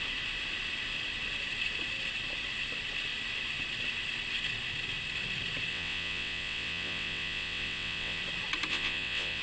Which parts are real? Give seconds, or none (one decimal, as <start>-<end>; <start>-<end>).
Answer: 0.0-5.7; 8.2-8.7